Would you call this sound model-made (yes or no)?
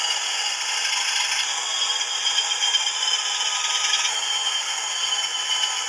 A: no